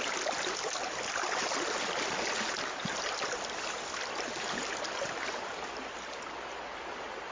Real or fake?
real